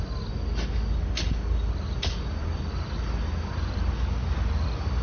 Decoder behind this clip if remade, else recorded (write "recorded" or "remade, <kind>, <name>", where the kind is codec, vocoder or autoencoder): recorded